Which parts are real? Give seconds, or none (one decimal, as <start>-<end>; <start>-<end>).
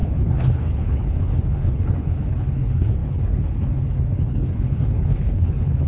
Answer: none